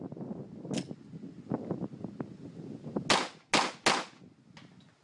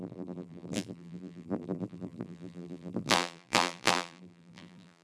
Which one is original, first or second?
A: first